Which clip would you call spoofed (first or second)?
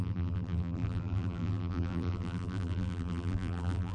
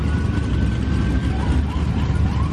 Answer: first